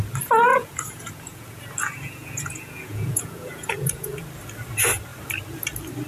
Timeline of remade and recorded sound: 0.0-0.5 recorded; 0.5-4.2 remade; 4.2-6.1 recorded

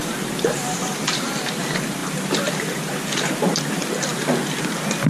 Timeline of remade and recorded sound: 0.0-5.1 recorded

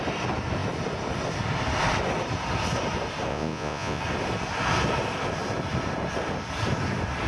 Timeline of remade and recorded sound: 0.0-3.3 recorded; 3.3-4.0 remade; 4.0-7.3 recorded